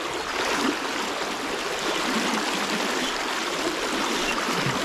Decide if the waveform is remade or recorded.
recorded